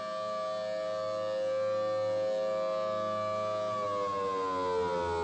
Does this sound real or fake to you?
real